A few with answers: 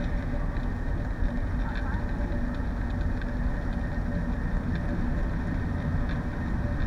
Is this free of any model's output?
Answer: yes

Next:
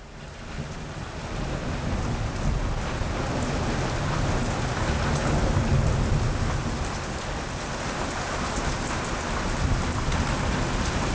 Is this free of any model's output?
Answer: yes